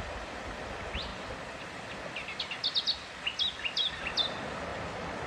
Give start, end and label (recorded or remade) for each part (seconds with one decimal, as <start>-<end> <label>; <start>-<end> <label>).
0.0-5.3 recorded